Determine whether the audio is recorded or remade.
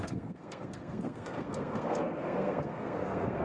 remade